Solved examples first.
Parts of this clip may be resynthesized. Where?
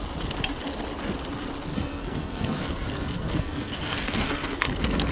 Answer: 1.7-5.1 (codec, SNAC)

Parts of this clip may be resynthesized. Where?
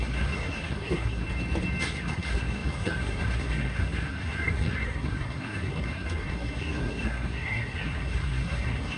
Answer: 0.0-1.2 (codec, SNAC); 1.8-9.0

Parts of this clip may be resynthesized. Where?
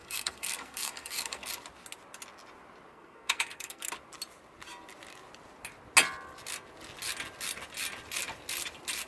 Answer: 0.0-1.5 (codec, SNAC); 2.9-3.9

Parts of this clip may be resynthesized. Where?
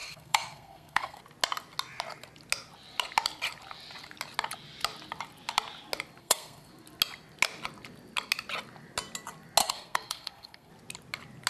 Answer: 0.0-1.2 (codec, SNAC); 6.2-6.7; 9.6-10.7